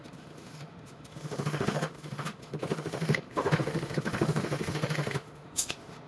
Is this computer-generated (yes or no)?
yes